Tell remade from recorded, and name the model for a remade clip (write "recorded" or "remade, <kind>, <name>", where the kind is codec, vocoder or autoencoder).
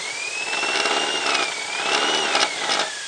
recorded